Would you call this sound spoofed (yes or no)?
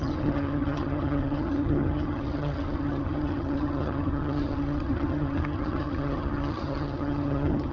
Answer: yes